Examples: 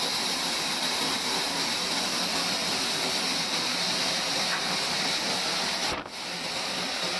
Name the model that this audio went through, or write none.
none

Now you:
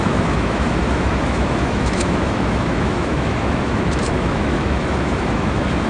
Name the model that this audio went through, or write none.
autoencoder, DAC-VAE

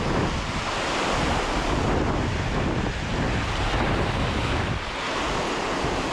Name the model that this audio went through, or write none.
none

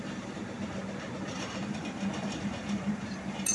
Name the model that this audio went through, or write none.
vocoder, BigVGAN v2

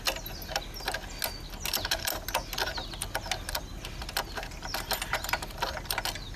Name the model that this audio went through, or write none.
none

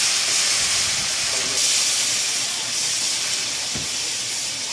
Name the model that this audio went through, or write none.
none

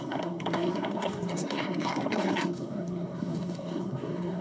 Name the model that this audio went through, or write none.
codec, SNAC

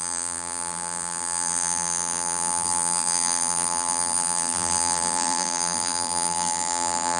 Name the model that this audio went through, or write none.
vocoder, BigVGAN v2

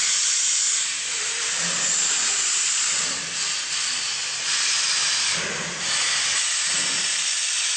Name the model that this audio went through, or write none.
vocoder, BigVGAN v2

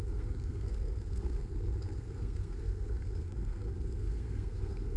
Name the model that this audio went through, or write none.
codec, SNAC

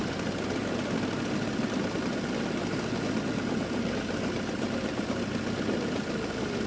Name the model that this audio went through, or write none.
none